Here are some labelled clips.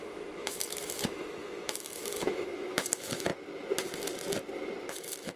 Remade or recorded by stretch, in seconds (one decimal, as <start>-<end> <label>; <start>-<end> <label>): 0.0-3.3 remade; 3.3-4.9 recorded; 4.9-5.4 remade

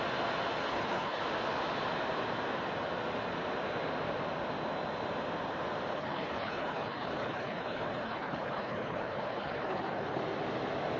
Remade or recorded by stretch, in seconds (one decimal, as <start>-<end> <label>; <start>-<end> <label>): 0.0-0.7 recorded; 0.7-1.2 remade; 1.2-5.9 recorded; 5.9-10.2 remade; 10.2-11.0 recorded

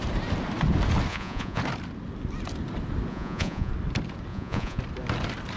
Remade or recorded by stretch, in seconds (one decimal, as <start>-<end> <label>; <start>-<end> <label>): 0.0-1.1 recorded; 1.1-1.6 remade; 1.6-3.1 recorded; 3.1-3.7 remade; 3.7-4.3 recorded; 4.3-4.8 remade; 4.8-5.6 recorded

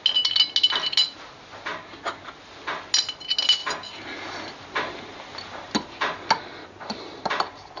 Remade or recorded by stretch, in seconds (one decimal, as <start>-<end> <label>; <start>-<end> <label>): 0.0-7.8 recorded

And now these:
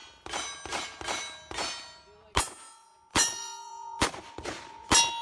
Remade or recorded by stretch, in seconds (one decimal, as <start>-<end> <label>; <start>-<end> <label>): 0.0-3.1 recorded; 3.1-4.7 remade; 4.7-5.2 recorded

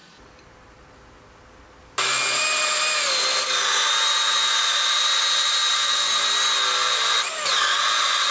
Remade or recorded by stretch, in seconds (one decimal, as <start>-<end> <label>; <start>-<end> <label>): 0.0-8.3 recorded

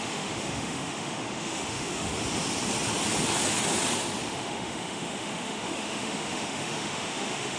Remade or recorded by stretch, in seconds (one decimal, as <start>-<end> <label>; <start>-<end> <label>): 0.0-2.1 remade; 2.1-4.3 recorded; 4.3-7.6 remade